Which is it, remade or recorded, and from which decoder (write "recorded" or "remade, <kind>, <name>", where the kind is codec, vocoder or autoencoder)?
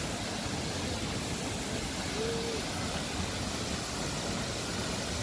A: recorded